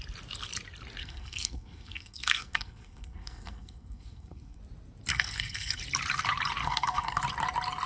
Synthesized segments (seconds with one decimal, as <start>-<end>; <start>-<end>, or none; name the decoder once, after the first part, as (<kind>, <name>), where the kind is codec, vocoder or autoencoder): 1.0-4.6 (codec, SNAC); 5.1-5.8; 6.6-7.2